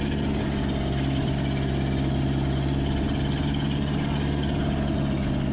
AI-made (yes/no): no